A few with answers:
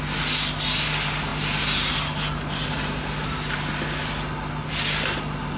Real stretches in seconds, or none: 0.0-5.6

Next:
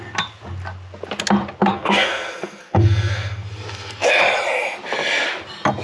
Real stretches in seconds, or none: 0.0-1.7; 4.2-5.8

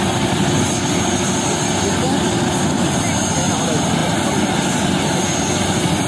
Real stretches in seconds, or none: 0.0-6.1

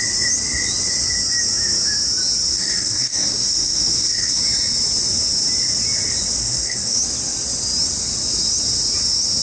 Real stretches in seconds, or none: 0.0-2.5; 4.4-6.4; 7.0-9.4

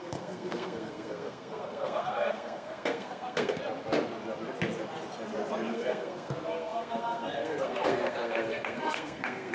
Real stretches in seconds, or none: 3.6-5.7

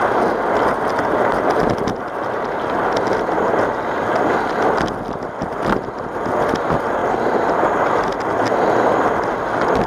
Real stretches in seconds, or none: 0.0-9.9